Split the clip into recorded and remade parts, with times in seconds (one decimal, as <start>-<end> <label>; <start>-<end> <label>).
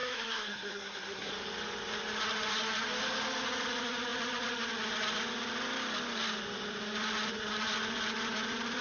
0.0-1.3 remade; 1.3-8.8 recorded